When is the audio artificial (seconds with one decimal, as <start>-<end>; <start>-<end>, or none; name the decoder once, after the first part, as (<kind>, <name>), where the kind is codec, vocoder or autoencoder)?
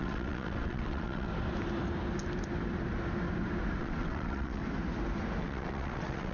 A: 0.0-1.3 (vocoder, WaveNeXt); 3.8-4.6; 5.4-6.3